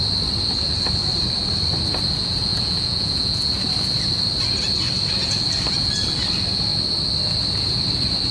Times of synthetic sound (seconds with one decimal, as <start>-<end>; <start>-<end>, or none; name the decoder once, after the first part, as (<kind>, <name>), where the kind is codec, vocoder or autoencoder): 2.5-3.5 (vocoder, Vocos)